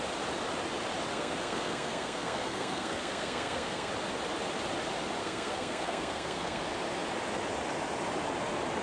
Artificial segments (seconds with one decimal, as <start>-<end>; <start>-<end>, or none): 1.1-3.9; 5.2-6.6